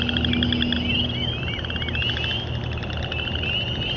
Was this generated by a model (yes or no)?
no